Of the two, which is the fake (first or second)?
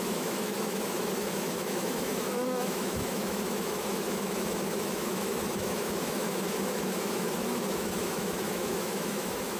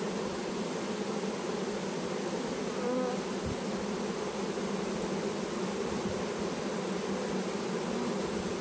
first